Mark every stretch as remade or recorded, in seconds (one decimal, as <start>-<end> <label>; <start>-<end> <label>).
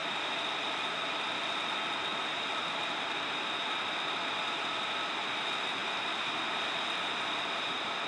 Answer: 0.0-8.1 recorded